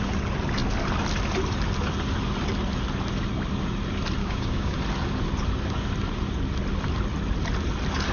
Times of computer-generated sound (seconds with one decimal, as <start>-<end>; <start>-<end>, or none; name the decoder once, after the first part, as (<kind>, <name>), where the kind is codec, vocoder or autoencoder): 4.2-4.8 (codec, DAC)